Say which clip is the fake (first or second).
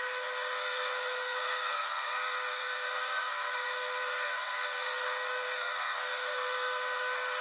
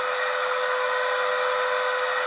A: first